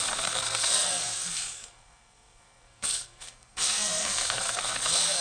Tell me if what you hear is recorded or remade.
remade